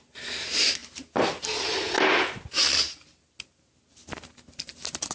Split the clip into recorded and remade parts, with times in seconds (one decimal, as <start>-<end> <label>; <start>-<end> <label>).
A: 0.0-5.1 recorded